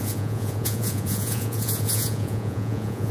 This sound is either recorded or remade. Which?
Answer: remade